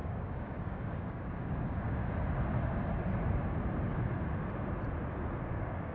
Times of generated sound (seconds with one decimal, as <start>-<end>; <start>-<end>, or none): 0.0-2.0; 5.5-5.9